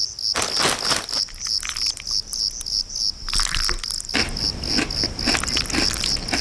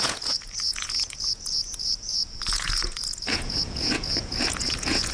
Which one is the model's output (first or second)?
second